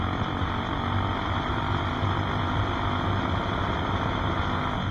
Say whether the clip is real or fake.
real